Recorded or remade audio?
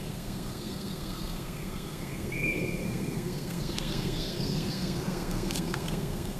remade